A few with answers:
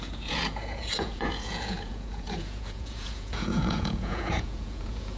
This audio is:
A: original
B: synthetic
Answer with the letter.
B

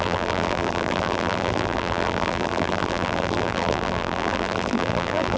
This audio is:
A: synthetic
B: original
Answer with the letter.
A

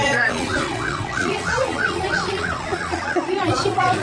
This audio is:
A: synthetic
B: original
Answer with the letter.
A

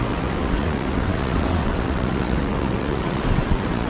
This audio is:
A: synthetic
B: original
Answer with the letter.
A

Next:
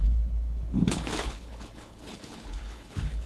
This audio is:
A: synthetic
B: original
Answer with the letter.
A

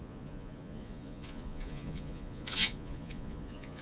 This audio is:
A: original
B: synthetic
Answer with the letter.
B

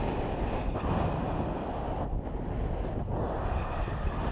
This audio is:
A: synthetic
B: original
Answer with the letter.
B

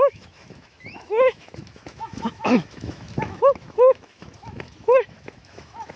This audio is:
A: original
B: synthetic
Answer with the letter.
B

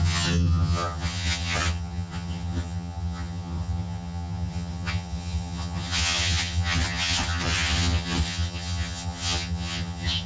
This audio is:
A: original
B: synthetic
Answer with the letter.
B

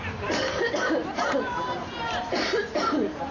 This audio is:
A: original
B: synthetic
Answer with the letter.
B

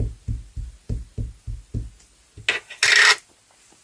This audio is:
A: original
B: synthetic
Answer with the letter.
A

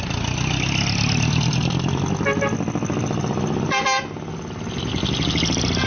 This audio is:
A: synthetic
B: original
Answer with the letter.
B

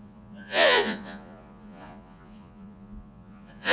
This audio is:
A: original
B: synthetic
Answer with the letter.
B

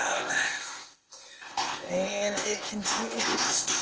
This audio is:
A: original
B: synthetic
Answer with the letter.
B